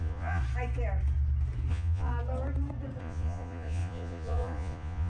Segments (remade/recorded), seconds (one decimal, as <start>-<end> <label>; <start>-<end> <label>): 0.0-0.4 remade; 0.4-1.7 recorded; 1.7-2.1 remade; 2.1-3.0 recorded; 3.0-5.1 remade